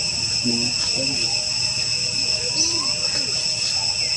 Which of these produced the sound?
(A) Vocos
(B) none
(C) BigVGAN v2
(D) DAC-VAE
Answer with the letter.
B